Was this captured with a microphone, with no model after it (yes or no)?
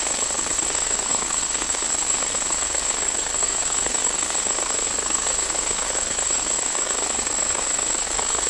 no